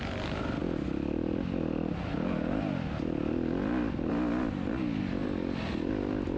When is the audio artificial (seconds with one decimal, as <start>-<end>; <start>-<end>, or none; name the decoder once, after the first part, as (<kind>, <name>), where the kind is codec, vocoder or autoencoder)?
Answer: none